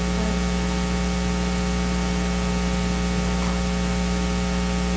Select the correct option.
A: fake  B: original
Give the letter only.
B